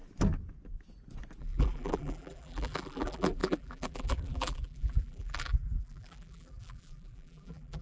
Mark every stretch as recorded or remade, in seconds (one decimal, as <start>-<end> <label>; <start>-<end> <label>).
0.0-1.4 recorded; 1.4-7.8 remade